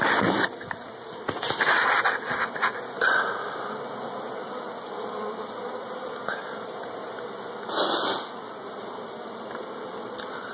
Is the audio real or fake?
real